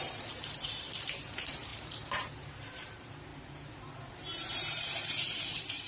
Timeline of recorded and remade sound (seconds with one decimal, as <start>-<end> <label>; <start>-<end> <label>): 0.0-3.3 remade; 3.3-3.9 recorded; 3.9-5.9 remade